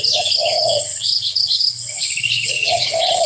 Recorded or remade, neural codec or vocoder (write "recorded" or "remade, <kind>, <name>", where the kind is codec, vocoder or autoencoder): remade, codec, HILCodec